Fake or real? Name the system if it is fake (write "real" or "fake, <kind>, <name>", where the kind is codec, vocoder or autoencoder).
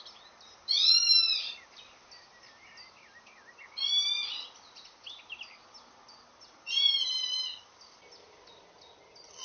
real